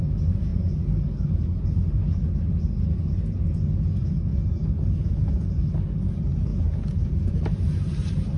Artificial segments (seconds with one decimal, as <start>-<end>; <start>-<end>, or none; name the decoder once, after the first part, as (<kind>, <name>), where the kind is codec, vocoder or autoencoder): 4.3-5.5 (vocoder, Vocos); 6.5-7.3

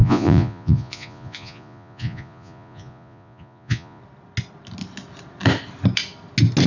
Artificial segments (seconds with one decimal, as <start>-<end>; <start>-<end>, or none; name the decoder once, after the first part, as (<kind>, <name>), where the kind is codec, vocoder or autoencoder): 0.0-4.0 (vocoder, Vocos)

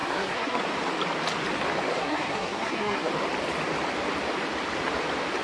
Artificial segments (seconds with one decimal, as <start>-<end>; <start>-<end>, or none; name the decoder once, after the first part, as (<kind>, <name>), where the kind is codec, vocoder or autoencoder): 0.0-0.6 (codec, SNAC); 1.9-3.1

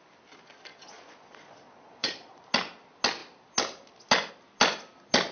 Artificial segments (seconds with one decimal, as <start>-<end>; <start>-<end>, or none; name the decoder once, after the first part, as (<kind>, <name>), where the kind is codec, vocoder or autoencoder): 0.7-2.4 (vocoder, Vocos)

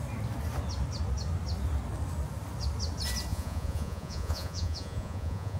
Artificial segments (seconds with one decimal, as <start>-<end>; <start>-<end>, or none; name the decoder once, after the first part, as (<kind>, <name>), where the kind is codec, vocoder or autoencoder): 3.3-5.6 (vocoder, Vocos)